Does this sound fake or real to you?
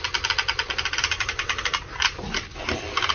real